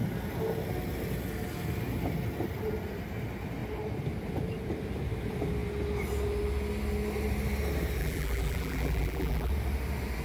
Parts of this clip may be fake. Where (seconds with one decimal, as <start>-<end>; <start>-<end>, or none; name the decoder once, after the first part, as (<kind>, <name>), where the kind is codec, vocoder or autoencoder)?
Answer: 8.0-9.5 (vocoder, BigVGAN v2)